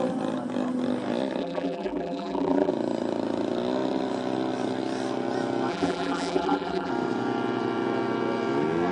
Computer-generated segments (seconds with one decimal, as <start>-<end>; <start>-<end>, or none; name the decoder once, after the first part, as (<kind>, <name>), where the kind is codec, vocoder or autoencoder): 1.4-2.7 (vocoder, BigVGAN v2); 5.7-6.9

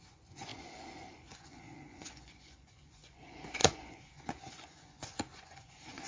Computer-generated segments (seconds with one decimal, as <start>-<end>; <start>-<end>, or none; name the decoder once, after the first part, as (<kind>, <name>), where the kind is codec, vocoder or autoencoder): 0.0-6.1 (vocoder, Vocos)

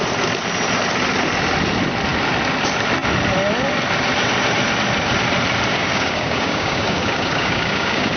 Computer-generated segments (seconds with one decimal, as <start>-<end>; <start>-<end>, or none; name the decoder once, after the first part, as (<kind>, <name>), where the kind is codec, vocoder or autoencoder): 5.7-8.2 (codec, DAC)

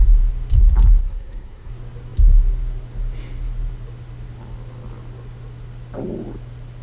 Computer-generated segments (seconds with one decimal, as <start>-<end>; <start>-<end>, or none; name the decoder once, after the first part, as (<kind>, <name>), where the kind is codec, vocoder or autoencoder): 1.0-1.7 (codec, SNAC)

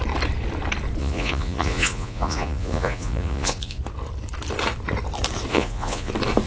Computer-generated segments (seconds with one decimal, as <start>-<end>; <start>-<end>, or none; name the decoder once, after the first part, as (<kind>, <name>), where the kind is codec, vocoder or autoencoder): 1.0-3.8 (vocoder, Vocos); 5.5-6.1

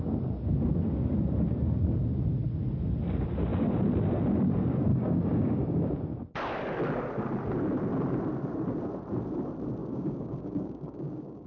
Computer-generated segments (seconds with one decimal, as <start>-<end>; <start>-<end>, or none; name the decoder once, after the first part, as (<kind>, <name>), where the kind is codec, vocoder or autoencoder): 4.9-5.9 (codec, DAC); 9.8-11.5

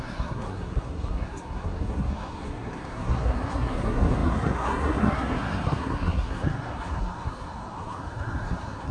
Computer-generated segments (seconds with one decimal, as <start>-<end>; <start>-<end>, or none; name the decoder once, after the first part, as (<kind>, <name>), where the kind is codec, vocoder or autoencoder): 0.0-8.9 (codec, SNAC)